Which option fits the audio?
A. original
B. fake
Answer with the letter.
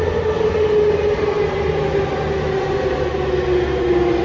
A